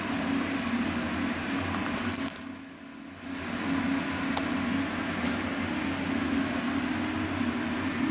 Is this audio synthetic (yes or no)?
no